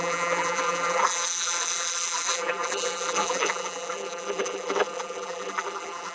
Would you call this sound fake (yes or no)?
yes